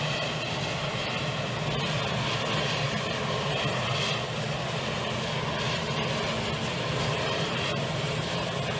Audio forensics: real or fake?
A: real